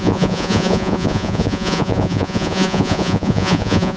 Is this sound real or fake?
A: fake